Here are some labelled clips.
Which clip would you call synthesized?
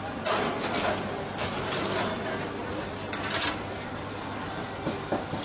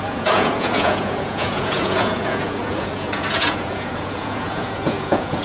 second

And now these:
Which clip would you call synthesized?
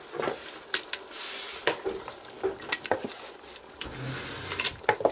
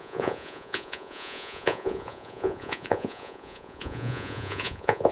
second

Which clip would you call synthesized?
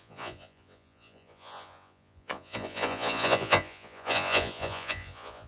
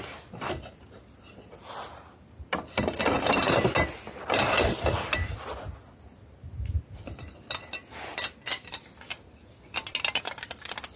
first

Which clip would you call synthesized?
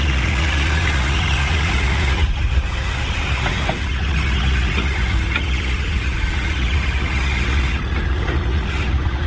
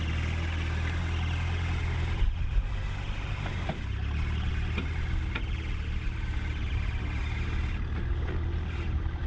first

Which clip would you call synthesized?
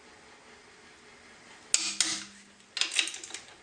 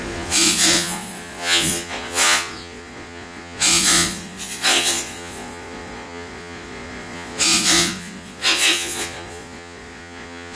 second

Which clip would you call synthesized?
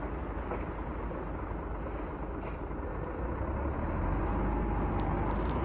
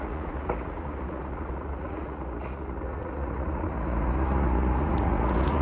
second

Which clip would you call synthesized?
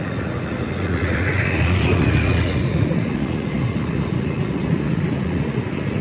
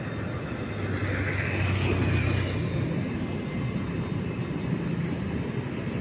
first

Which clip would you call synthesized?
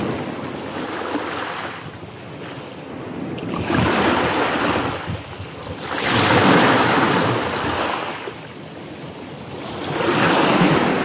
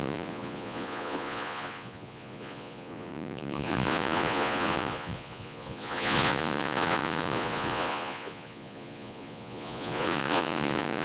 second